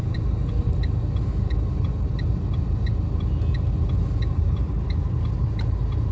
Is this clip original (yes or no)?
yes